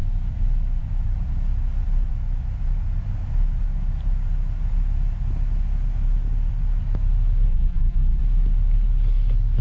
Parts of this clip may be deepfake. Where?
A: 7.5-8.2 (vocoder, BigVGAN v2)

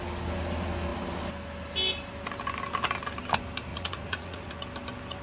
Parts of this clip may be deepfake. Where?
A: 3.7-4.6 (vocoder, Vocos)

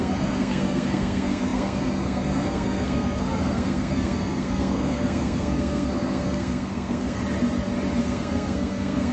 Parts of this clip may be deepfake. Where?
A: 0.0-7.2 (codec, SNAC); 8.0-9.1

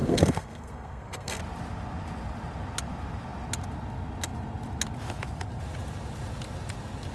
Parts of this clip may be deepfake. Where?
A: 0.0-1.4 (codec, SNAC)

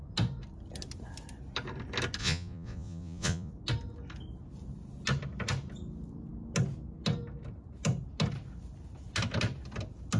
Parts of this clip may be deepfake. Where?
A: 2.2-3.5 (vocoder, Vocos)

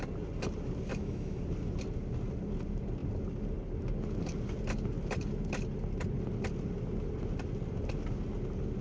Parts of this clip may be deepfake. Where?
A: 0.9-1.4 (autoencoder, DAC-VAE)

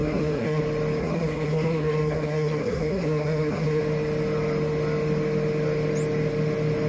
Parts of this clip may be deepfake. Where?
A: 0.0-0.6 (codec, SNAC); 1.0-3.8

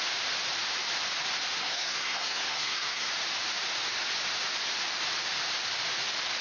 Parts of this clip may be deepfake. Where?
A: 1.6-3.1 (codec, SNAC)